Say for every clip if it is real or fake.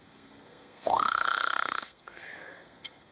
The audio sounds fake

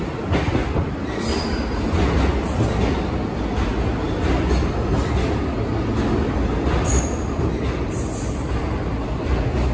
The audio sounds real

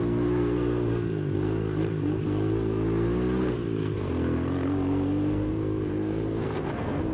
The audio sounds fake